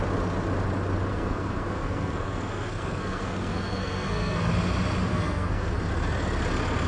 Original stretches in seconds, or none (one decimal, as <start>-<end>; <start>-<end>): 0.0-1.1; 4.5-5.1; 5.7-6.9